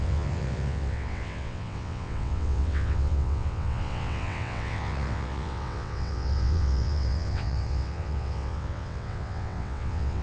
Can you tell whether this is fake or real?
fake